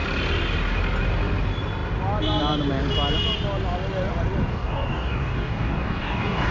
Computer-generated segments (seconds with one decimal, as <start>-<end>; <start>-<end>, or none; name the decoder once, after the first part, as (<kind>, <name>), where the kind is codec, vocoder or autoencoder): 4.5-6.5 (codec, DAC)

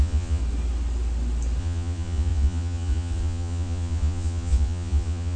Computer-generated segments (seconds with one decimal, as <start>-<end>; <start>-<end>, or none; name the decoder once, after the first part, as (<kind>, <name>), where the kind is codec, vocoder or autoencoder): 0.0-0.4 (vocoder, Vocos); 1.6-5.4

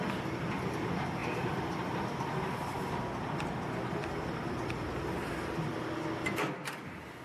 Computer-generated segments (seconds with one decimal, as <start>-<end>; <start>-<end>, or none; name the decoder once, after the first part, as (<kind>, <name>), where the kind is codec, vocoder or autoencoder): 1.2-2.9 (vocoder, BigVGAN v2); 4.4-5.7

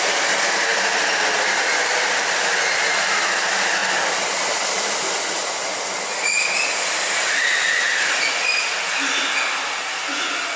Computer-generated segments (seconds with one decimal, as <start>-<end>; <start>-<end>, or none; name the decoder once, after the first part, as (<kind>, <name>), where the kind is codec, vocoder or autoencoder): none

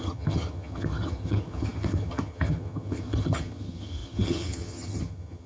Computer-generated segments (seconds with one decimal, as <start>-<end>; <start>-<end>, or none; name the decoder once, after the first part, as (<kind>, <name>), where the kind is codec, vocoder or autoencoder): 0.0-5.5 (vocoder, HiFi-GAN)